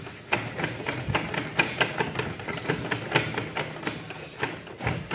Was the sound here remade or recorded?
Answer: recorded